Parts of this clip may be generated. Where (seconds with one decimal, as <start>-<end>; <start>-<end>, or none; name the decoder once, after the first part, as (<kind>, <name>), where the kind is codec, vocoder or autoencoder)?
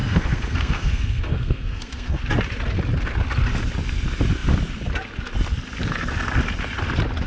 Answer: 0.0-2.2 (codec, SNAC)